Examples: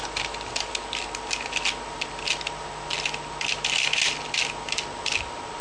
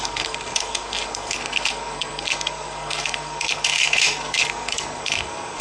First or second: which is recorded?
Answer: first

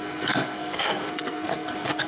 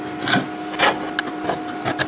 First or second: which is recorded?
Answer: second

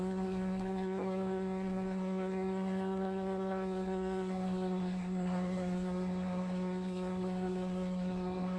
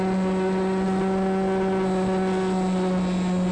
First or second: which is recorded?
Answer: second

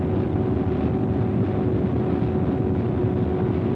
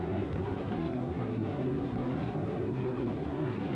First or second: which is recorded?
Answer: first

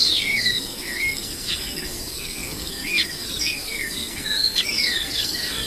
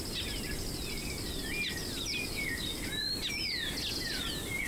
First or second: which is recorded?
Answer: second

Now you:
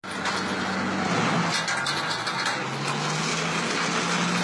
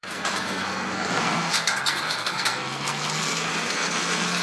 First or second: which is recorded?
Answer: first